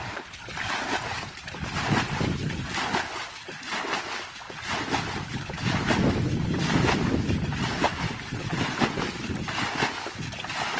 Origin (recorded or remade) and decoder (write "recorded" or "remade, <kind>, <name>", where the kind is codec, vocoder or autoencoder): recorded